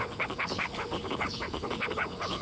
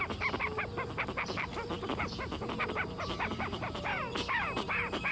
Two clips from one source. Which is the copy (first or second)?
first